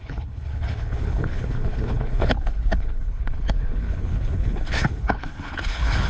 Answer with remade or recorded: remade